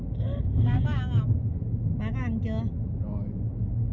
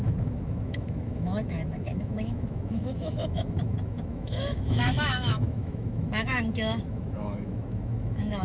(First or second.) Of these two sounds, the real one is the first